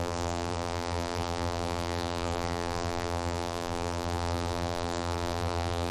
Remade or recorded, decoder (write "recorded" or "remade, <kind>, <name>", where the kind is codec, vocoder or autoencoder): remade, vocoder, BigVGAN v2